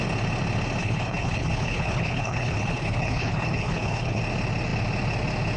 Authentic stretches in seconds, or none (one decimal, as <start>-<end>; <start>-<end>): 0.0-0.8; 4.2-5.6